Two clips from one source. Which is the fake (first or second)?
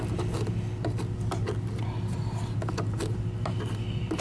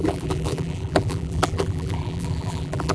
second